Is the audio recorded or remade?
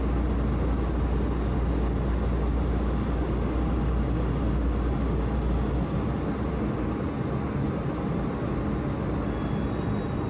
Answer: recorded